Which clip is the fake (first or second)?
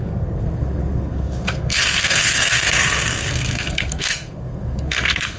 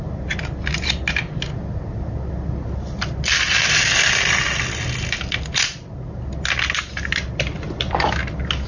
first